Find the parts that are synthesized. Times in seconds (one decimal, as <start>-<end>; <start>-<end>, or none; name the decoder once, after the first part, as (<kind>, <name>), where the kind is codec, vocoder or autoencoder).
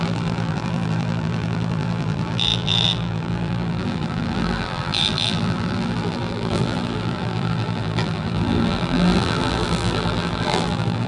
0.0-11.1 (vocoder, BigVGAN v2)